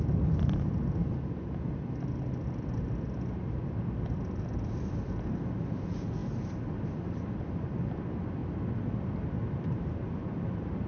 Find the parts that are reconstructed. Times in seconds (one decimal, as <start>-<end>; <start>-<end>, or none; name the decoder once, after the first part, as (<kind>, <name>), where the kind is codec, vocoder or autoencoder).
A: 0.0-8.4 (vocoder, BigVGAN v2); 9.5-10.9

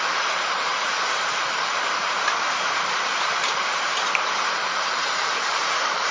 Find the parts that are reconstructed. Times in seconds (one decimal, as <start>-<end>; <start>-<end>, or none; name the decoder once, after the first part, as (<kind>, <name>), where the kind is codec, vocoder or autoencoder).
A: 0.0-6.1 (vocoder, BigVGAN v2)